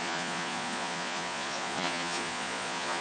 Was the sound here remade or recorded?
remade